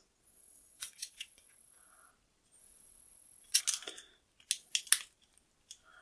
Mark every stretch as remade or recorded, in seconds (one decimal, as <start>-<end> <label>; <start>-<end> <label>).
0.0-0.4 recorded; 0.4-2.1 remade; 2.1-2.6 recorded; 2.6-3.6 remade; 3.6-6.0 recorded